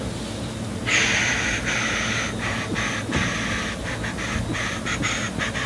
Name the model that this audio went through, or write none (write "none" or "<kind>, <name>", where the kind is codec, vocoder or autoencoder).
none